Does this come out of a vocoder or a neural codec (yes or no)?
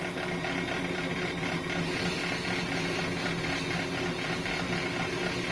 no